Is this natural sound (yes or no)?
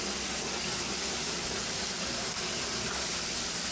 yes